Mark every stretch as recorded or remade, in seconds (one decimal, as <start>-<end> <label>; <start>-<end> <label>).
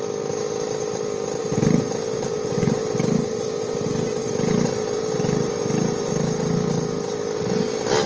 0.0-1.4 recorded; 1.4-6.1 remade; 6.1-8.1 recorded